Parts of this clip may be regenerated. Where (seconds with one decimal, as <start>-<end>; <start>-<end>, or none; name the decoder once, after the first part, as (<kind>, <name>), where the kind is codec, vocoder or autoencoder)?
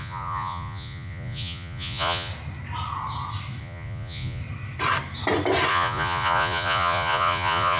0.0-2.3 (vocoder, Vocos); 3.6-4.4; 5.7-7.8